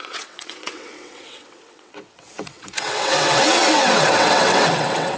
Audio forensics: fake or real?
fake